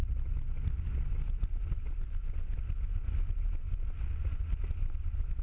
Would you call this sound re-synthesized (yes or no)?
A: no